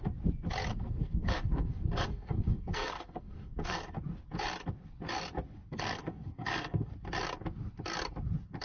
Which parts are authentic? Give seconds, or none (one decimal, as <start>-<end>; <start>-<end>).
0.0-0.7; 4.0-5.7; 6.9-8.6